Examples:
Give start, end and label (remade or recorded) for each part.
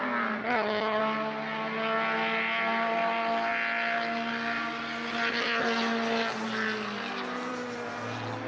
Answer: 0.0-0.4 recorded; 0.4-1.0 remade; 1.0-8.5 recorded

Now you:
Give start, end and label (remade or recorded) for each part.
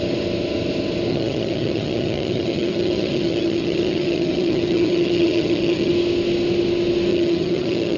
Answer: 0.0-1.1 recorded; 1.1-5.9 remade; 5.9-7.1 recorded; 7.1-8.0 remade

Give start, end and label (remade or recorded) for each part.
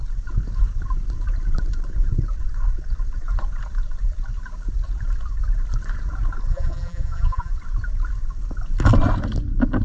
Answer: 0.0-6.5 recorded; 6.5-7.5 remade; 7.5-9.8 recorded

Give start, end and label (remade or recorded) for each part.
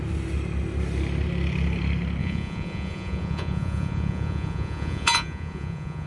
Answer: 0.0-2.2 recorded; 2.2-6.1 remade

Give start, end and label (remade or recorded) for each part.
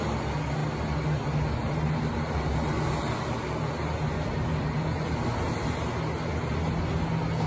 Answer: 0.0-7.5 recorded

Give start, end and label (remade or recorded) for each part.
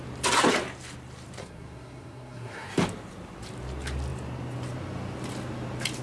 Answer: 0.0-1.4 recorded; 1.4-2.7 remade; 2.7-6.0 recorded